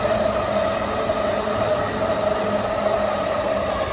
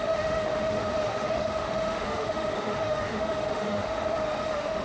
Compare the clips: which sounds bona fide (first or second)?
first